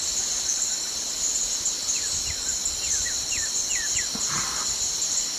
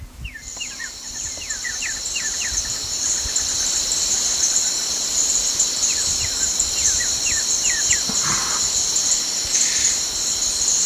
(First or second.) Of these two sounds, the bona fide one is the first